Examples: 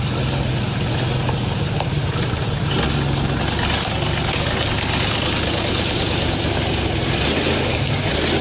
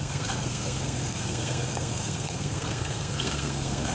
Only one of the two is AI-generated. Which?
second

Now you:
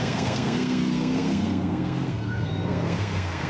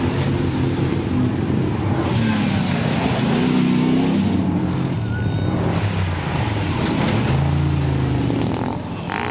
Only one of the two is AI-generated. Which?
first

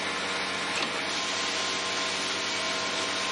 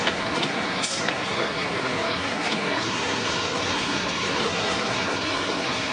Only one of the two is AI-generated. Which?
second